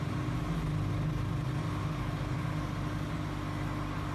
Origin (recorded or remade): recorded